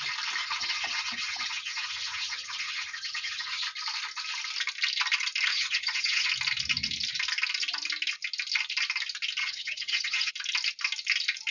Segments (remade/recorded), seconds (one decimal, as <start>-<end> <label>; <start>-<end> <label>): 0.0-0.4 recorded; 0.4-3.6 remade; 3.6-5.5 recorded; 5.5-6.3 remade; 6.3-9.4 recorded; 9.4-10.3 remade; 10.3-11.5 recorded